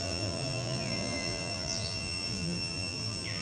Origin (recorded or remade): remade